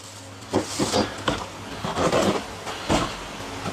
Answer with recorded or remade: recorded